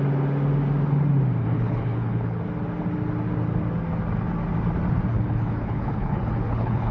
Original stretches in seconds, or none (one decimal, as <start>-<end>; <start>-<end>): 0.0-1.4; 2.4-5.1